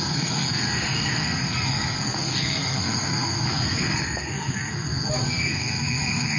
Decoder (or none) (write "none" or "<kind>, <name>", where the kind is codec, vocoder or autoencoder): codec, SNAC